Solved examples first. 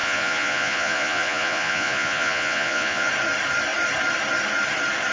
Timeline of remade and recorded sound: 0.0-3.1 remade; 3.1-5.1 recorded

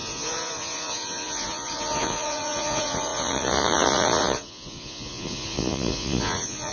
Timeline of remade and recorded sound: 0.0-6.7 remade

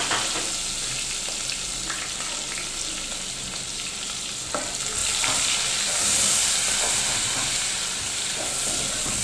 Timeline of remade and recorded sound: 0.0-9.2 recorded

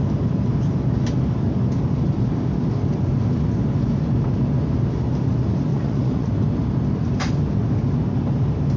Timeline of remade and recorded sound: 0.0-5.7 recorded; 5.7-6.3 remade; 6.3-8.8 recorded

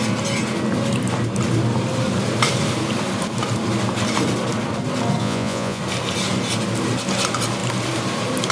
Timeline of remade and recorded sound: 0.0-5.2 recorded; 5.2-5.8 remade; 5.8-8.5 recorded